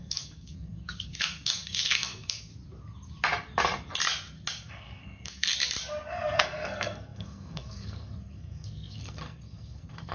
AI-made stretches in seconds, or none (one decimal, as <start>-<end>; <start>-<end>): 0.0-2.5; 4.7-5.5; 6.1-10.1